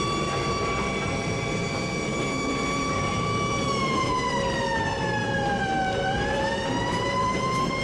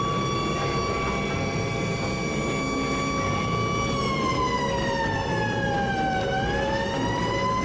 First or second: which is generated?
first